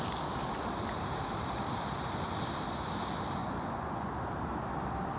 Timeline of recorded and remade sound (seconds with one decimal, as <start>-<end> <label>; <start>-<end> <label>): 0.0-3.4 recorded; 3.4-4.1 remade; 4.1-5.2 recorded